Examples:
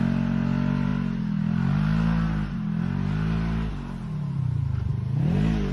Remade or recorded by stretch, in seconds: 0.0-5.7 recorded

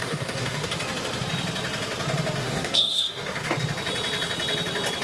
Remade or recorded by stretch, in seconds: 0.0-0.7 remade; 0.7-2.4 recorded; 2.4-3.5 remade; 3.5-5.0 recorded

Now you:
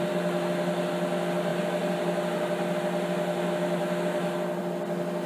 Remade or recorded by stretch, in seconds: 0.0-5.3 recorded

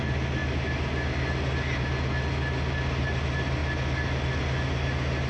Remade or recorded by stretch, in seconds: 0.0-5.3 recorded

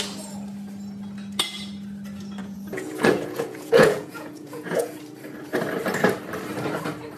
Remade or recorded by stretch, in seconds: 0.0-2.4 recorded; 2.4-5.0 remade; 5.0-7.2 recorded

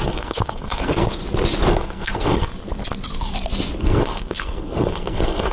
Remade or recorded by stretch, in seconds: 0.0-1.2 remade; 1.2-1.7 recorded; 1.7-2.5 remade; 2.5-3.8 recorded; 3.8-5.5 remade

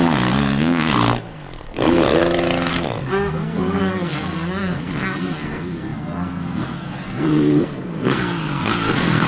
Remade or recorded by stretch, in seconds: 0.0-2.2 remade; 2.2-2.7 recorded; 2.7-9.3 remade

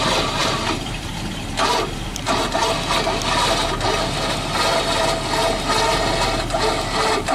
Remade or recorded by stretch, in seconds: 0.0-0.4 recorded; 0.4-2.2 remade; 2.2-7.3 recorded